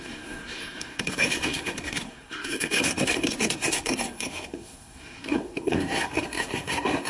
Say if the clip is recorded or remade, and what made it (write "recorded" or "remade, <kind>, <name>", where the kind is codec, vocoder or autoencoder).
remade, codec, SNAC